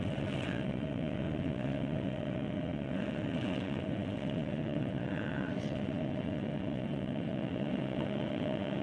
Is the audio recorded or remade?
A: remade